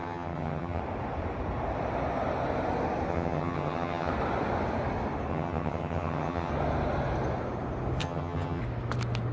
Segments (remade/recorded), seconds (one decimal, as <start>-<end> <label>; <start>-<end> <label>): 0.0-0.8 remade; 0.8-3.1 recorded; 3.1-4.1 remade; 4.1-5.3 recorded; 5.3-6.5 remade; 6.5-8.0 recorded; 8.0-8.6 remade; 8.6-9.3 recorded